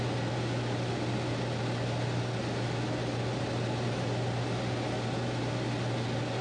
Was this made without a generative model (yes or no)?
yes